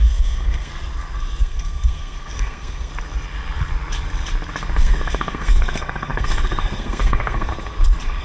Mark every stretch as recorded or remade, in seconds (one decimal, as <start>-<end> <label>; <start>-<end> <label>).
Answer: 0.0-0.7 remade; 0.7-1.4 recorded; 1.4-2.9 remade; 2.9-4.8 recorded; 4.8-7.5 remade; 7.5-8.2 recorded